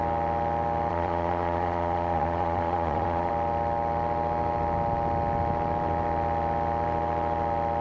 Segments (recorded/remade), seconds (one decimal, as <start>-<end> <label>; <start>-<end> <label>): 0.0-0.9 recorded; 0.9-3.3 remade; 3.3-7.8 recorded